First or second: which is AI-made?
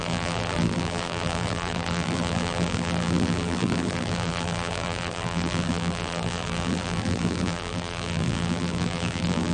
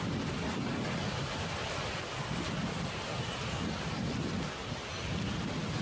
first